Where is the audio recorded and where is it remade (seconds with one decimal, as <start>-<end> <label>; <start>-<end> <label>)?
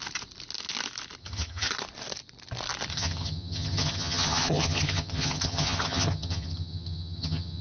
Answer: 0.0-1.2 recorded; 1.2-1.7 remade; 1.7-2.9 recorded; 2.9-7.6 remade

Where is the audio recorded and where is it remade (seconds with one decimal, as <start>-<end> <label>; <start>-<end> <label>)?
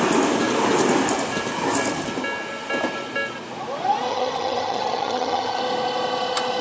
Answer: 0.0-4.1 recorded; 4.1-5.6 remade; 5.6-6.6 recorded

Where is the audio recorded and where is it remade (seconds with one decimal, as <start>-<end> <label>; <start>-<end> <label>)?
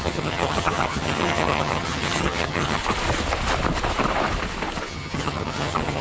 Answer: 0.0-2.8 remade; 2.8-4.9 recorded; 4.9-6.0 remade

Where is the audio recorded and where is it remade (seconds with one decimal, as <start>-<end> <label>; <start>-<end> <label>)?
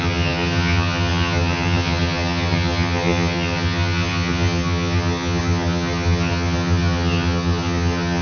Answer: 0.0-8.2 remade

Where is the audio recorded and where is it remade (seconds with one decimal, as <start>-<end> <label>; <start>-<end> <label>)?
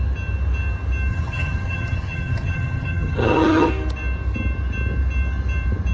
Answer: 0.0-1.1 recorded; 1.1-3.7 remade; 3.7-5.9 recorded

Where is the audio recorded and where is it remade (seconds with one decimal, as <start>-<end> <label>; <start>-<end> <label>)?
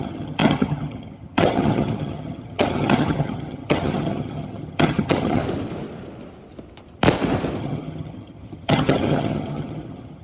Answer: 0.0-5.4 remade; 5.4-7.6 recorded; 7.6-10.2 remade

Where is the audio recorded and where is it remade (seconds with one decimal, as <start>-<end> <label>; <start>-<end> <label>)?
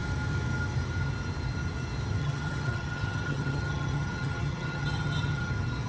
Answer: 0.0-2.2 recorded; 2.2-5.5 remade; 5.5-5.9 recorded